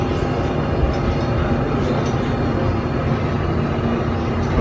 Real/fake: real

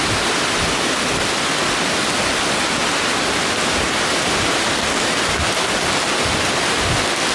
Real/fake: real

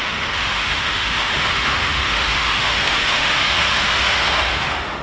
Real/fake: fake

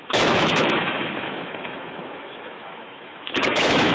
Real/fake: fake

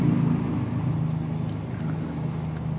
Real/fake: real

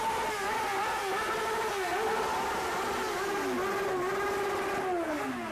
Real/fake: real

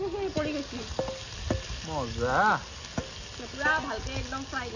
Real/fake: real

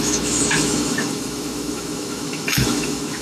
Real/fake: fake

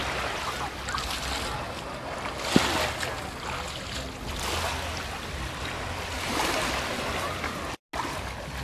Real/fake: real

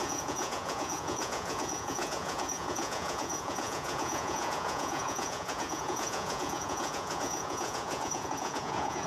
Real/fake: fake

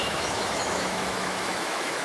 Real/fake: fake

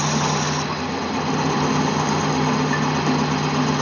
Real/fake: real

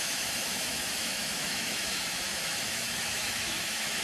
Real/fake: fake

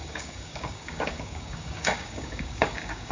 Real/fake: fake